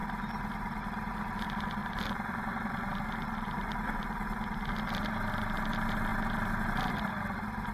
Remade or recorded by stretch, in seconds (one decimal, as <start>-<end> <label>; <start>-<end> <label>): 0.0-7.7 recorded